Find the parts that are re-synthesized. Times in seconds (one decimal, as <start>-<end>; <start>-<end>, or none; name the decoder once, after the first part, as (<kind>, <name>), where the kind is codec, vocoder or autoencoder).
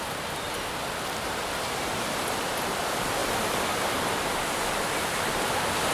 none